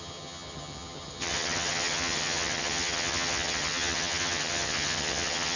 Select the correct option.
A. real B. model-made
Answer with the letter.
B